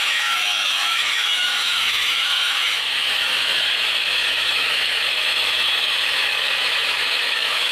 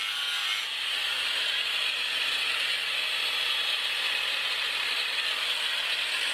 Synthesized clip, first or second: first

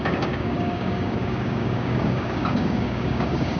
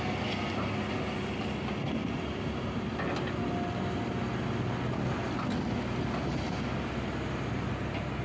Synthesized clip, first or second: first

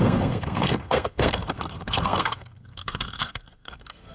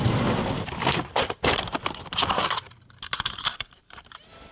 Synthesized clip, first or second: first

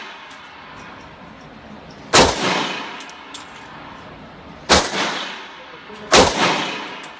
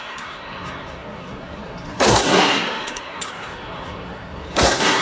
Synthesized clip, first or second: second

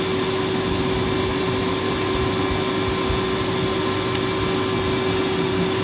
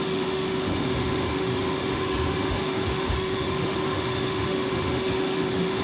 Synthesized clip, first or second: second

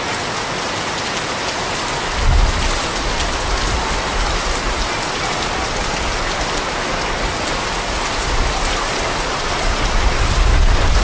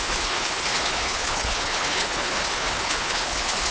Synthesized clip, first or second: second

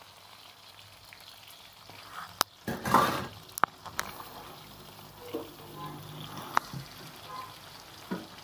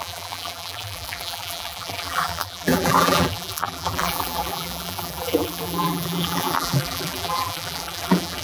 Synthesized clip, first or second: second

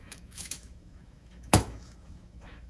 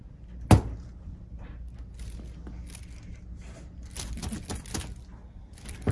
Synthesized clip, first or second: first